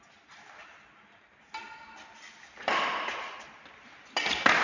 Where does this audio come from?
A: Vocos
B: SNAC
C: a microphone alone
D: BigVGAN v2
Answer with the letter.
C